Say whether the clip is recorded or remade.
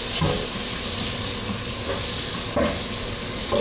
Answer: recorded